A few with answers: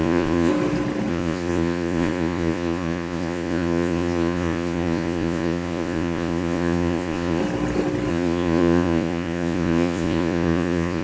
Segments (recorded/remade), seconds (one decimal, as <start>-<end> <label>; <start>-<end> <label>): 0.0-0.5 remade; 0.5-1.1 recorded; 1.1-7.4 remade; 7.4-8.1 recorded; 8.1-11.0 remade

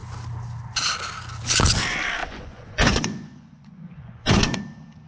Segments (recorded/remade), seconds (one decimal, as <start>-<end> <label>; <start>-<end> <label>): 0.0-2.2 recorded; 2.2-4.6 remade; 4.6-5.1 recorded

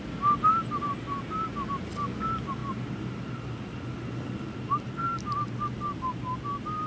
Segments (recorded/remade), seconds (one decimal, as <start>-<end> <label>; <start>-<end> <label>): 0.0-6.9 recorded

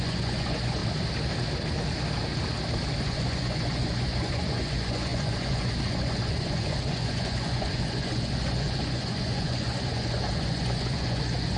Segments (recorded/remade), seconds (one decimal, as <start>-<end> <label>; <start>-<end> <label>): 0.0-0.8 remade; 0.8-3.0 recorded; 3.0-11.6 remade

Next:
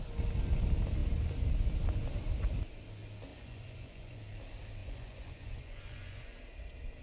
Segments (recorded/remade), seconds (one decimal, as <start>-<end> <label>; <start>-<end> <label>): 0.0-3.3 recorded; 3.3-4.2 remade; 4.2-4.8 recorded; 4.8-6.4 remade; 6.4-7.0 recorded

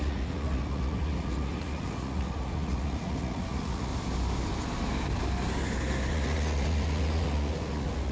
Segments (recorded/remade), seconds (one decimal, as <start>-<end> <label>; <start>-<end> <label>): 0.0-3.9 remade; 3.9-6.1 recorded; 6.1-8.1 remade

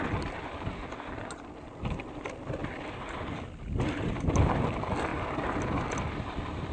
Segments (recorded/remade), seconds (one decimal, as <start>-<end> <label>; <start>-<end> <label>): 0.0-6.7 recorded